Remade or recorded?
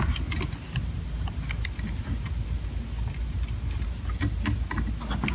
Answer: recorded